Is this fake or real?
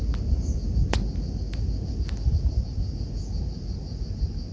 real